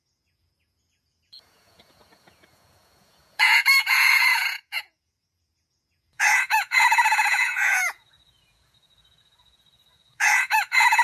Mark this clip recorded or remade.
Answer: remade